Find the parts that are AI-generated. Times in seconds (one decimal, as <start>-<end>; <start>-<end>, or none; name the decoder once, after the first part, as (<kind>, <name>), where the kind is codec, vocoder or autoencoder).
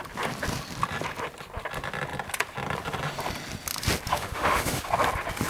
4.1-4.9 (autoencoder, DAC-VAE)